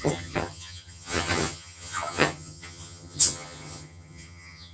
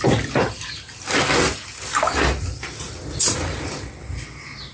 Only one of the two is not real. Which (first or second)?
first